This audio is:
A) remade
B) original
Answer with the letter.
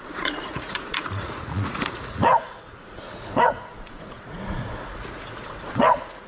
A